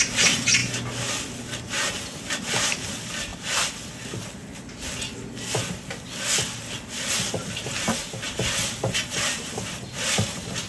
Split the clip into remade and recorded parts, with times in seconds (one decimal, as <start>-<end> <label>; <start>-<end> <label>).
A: 0.0-0.6 remade; 0.6-2.4 recorded; 2.4-3.3 remade; 3.3-7.0 recorded; 7.0-10.7 remade